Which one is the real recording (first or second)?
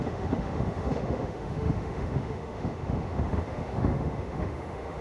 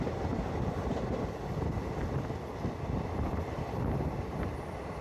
second